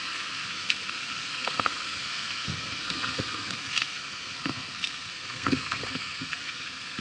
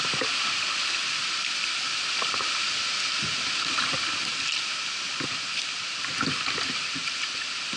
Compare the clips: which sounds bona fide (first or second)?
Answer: second